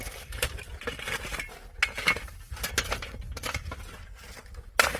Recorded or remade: recorded